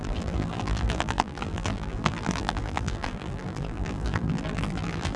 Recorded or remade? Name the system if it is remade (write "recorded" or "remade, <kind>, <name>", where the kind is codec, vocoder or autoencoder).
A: remade, vocoder, BigVGAN v2